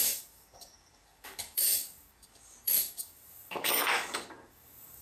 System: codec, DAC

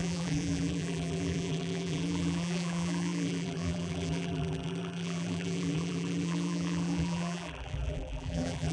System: vocoder, BigVGAN v2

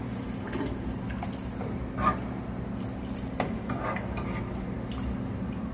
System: none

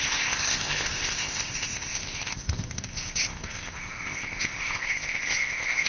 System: codec, ZipCodec